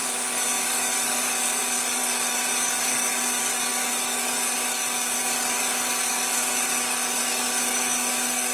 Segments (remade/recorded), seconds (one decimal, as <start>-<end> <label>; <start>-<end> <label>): 0.0-8.5 remade

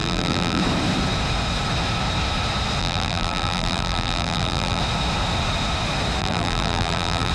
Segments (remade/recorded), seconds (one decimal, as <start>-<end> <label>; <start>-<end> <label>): 0.0-0.6 remade; 0.6-2.8 recorded; 2.8-4.8 remade; 4.8-6.2 recorded; 6.2-7.3 remade

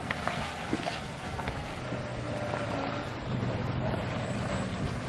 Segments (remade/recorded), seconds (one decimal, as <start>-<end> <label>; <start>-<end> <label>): 0.0-1.7 remade; 1.7-5.1 recorded

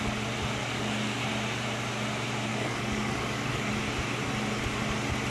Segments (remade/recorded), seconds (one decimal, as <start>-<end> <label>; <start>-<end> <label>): 0.0-0.6 recorded; 0.6-1.3 remade; 1.3-2.5 recorded; 2.5-3.7 remade; 3.7-5.3 recorded

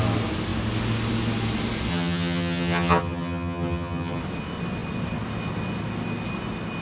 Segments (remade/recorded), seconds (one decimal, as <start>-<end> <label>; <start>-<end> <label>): 0.0-1.9 recorded; 1.9-4.2 remade; 4.2-6.8 recorded